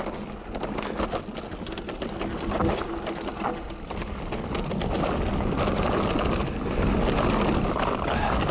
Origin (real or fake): real